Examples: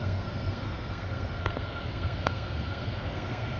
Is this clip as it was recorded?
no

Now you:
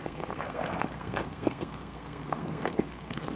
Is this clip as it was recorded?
no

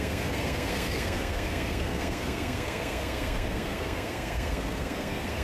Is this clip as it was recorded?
no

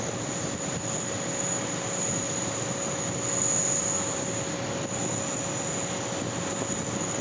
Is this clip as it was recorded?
yes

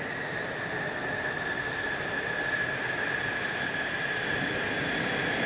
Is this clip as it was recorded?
yes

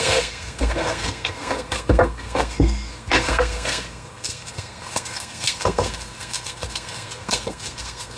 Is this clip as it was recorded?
no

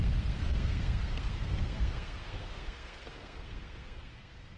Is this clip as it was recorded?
no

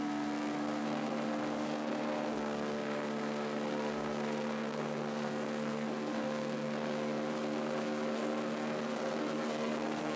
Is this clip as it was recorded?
no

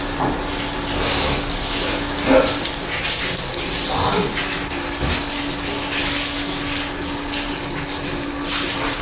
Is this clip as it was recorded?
yes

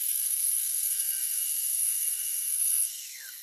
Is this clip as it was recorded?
no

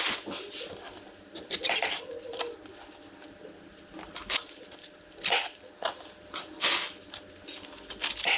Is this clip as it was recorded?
yes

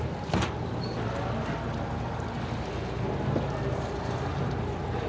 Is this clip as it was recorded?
yes